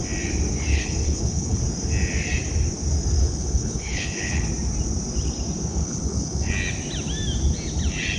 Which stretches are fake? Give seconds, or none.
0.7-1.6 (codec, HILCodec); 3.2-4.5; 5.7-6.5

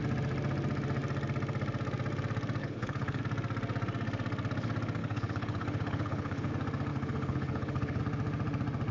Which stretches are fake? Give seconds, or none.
2.6-3.2 (codec, HILCodec); 5.0-6.5; 6.9-8.0

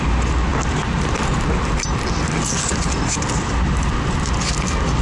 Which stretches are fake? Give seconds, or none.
none

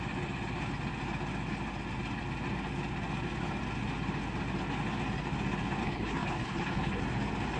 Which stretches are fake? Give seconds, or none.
5.8-7.0 (codec, HILCodec)